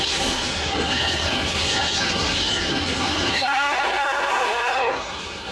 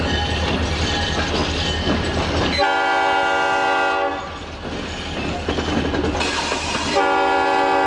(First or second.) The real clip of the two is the second